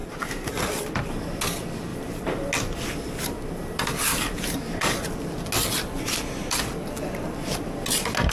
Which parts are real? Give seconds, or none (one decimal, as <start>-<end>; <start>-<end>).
0.5-1.9; 2.5-4.1; 5.1-8.3